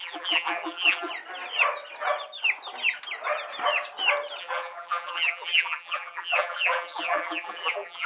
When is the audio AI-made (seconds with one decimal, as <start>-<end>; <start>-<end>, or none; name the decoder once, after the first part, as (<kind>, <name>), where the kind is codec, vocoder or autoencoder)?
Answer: 0.0-1.1 (vocoder, BigVGAN v2); 4.4-8.1